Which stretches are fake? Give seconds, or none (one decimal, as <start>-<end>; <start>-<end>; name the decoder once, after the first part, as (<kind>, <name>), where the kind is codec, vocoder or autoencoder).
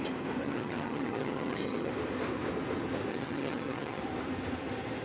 0.4-1.9 (vocoder, HiFi-GAN); 3.1-4.0